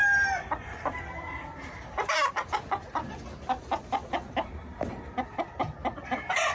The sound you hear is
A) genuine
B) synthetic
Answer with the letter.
A